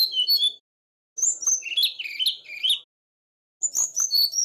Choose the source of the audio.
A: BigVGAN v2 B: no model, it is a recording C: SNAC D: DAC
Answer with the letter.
B